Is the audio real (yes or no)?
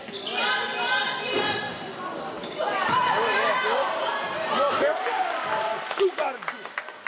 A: yes